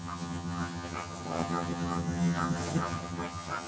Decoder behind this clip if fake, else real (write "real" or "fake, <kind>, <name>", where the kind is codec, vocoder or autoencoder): fake, vocoder, HiFi-GAN